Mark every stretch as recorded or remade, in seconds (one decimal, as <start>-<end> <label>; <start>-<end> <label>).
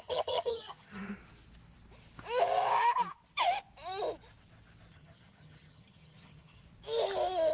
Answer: 0.0-1.0 remade; 1.0-4.9 recorded; 4.9-6.6 remade; 6.6-7.5 recorded